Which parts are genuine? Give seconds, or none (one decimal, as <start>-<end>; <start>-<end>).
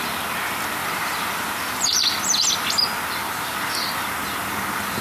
0.0-0.8; 2.5-5.0